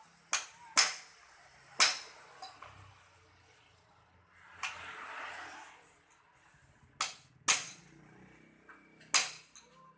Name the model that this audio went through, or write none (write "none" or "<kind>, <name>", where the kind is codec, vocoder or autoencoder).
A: none